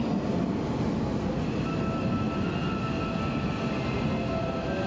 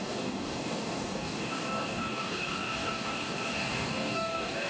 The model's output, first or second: second